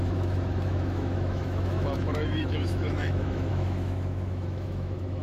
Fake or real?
fake